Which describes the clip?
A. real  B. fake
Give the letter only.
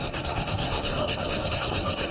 B